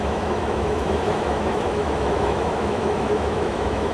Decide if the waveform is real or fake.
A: fake